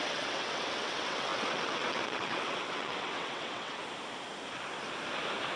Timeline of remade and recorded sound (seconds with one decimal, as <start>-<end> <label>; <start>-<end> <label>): 0.0-3.8 remade; 3.8-5.6 recorded